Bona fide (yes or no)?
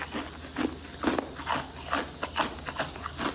yes